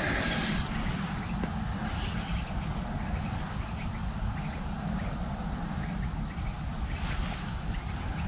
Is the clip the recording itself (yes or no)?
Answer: yes